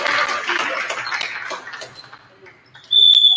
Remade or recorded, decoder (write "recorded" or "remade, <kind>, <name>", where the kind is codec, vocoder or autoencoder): recorded